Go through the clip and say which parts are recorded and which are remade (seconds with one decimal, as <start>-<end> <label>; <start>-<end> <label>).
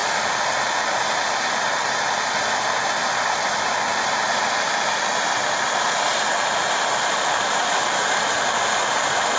0.0-9.4 recorded